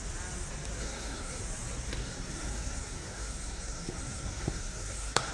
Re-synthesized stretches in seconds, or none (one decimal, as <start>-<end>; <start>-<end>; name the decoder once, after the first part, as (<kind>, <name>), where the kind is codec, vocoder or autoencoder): 0.8-1.4 (codec, SNAC); 2.0-5.3

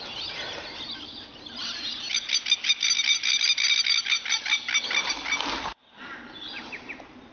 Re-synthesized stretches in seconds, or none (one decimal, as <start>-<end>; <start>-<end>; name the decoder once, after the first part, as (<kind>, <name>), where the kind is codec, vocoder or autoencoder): none

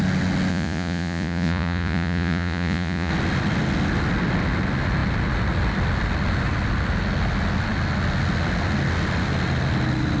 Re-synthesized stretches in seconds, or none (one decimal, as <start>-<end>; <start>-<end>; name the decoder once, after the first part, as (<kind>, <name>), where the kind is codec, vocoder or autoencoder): 0.5-3.1 (vocoder, Vocos)

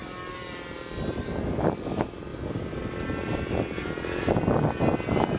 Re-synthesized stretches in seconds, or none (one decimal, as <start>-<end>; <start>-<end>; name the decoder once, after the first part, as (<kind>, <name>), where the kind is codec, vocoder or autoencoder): none

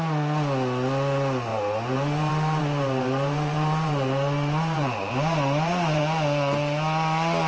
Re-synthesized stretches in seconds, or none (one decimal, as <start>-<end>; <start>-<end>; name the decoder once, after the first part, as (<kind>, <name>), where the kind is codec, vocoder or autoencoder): 1.5-6.0 (vocoder, BigVGAN v2)

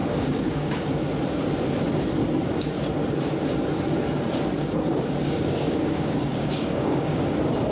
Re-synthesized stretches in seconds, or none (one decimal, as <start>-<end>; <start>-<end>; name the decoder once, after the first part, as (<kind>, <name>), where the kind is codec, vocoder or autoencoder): 0.0-1.0 (codec, DAC); 5.2-7.2

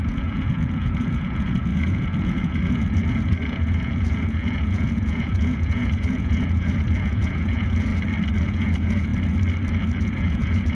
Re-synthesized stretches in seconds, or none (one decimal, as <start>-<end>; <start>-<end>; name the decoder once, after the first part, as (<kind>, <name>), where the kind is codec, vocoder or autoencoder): 0.0-7.9 (vocoder, Vocos); 8.4-9.1; 10.0-10.7

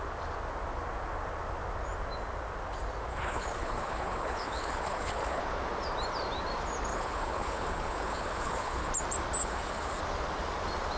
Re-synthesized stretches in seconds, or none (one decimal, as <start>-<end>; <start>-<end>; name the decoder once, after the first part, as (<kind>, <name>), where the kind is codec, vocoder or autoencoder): 3.1-5.4 (codec, HILCodec); 6.9-8.9; 9.4-10.0